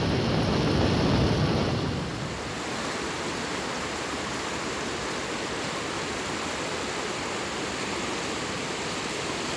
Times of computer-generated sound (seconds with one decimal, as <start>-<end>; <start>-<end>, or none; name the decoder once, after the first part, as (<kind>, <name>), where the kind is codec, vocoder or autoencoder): none